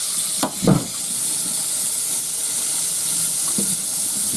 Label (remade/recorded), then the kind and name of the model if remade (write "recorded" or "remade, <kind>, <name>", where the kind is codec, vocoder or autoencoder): recorded